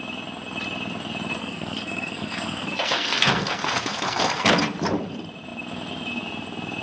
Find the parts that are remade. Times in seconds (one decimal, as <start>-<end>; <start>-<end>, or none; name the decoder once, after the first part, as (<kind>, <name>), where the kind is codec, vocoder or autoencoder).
1.4-4.6 (codec, SNAC)